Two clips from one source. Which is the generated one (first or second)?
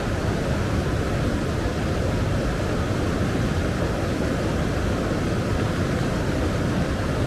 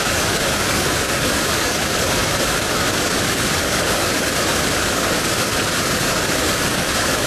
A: second